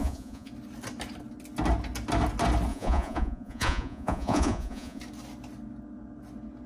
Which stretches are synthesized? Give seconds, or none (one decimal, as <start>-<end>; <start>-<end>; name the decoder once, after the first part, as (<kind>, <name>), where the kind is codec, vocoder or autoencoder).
0.0-0.5 (vocoder, Vocos); 2.7-5.0